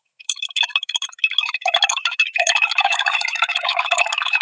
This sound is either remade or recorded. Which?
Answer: remade